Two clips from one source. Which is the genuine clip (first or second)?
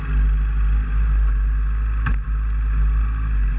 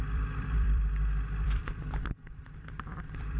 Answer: first